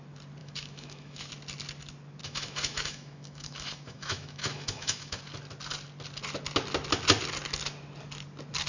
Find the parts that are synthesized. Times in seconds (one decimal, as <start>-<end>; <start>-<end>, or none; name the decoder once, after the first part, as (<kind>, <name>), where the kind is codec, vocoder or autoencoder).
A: 0.4-1.3 (autoencoder, DAC-VAE); 2.2-5.2